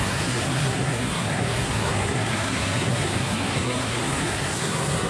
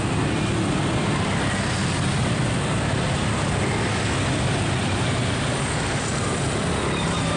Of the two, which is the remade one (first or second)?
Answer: first